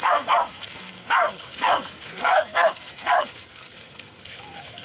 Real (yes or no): no